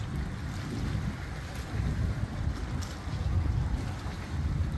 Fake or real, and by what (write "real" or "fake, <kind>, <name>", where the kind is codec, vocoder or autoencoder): real